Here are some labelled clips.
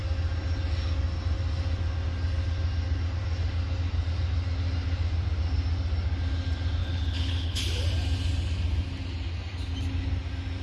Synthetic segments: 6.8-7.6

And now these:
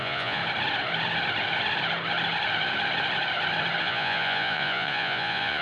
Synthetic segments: 0.0-0.4; 3.8-5.6

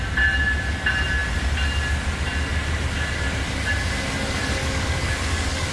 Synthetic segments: 4.6-5.7

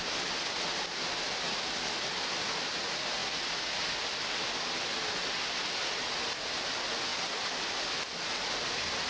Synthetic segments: none

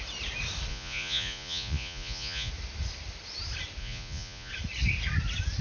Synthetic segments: 0.7-2.5; 3.8-4.5

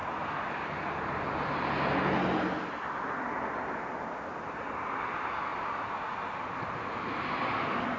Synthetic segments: 5.5-6.0

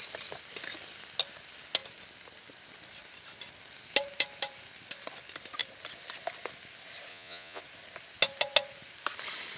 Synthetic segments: 7.1-7.6